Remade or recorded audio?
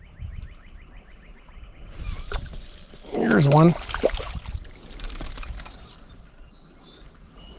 remade